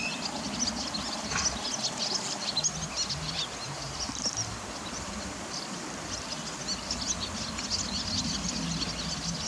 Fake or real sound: real